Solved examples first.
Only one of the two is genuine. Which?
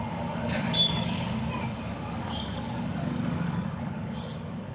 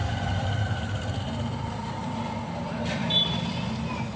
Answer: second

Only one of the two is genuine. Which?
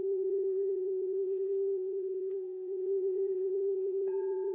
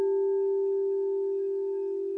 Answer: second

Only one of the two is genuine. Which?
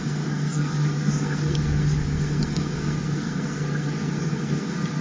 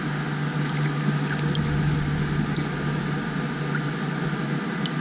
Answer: second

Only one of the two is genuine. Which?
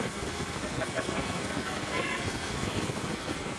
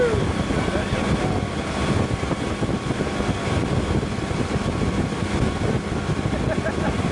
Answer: second